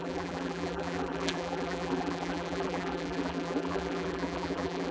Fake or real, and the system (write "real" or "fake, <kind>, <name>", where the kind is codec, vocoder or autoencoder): fake, vocoder, BigVGAN v2